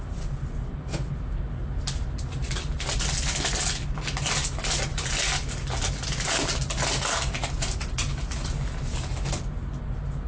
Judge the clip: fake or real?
real